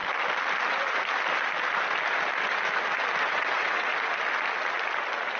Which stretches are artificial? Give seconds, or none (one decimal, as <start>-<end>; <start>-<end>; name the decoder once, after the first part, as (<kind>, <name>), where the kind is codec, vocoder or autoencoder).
3.2-3.9 (vocoder, WaveNeXt)